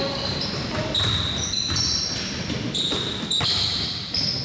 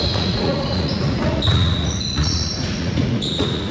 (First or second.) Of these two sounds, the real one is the first